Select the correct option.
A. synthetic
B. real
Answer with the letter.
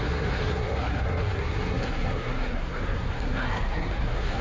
A